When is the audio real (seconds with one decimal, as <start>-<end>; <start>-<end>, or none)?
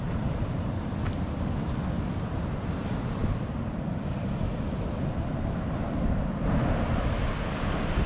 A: 3.2-6.9